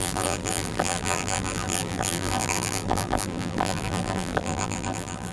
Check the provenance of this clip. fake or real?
fake